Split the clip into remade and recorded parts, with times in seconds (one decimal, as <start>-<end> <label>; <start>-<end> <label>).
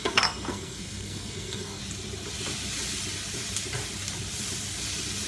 0.0-1.8 remade; 1.8-5.3 recorded